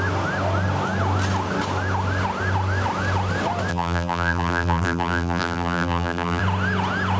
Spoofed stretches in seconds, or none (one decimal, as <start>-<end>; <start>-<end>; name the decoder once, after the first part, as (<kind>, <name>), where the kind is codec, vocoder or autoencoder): 3.7-6.4 (vocoder, BigVGAN v2)

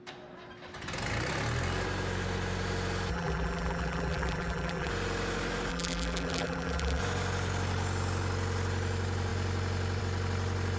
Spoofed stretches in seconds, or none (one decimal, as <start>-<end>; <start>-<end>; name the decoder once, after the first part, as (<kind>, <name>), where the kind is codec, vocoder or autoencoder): 3.1-4.9 (vocoder, BigVGAN v2); 5.7-7.0

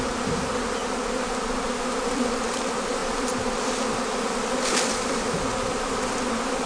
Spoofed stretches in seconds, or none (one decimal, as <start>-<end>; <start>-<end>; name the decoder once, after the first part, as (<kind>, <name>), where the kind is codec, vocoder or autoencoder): 0.0-0.8 (vocoder, BigVGAN v2); 2.1-6.7